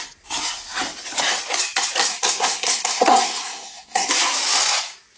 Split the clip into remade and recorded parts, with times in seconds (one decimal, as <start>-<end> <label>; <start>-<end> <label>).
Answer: 0.0-2.1 recorded; 2.1-4.1 remade; 4.1-5.2 recorded